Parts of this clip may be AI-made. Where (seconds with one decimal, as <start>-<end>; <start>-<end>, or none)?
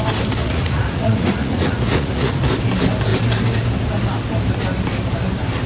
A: 0.4-2.5